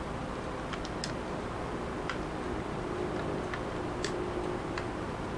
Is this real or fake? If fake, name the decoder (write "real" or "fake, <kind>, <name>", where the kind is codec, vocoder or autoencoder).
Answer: real